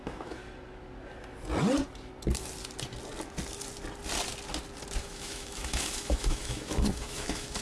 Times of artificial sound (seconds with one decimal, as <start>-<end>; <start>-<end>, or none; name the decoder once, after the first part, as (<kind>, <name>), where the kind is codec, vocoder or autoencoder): 0.0-0.4 (autoencoder, DAC-VAE); 5.0-7.6